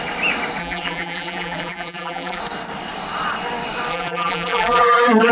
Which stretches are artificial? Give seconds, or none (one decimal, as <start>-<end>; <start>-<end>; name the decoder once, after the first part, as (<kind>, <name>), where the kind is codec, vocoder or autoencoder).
0.6-2.4 (vocoder, BigVGAN v2); 3.9-5.3